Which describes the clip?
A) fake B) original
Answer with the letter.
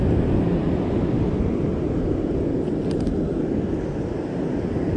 B